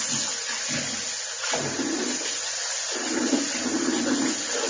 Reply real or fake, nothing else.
real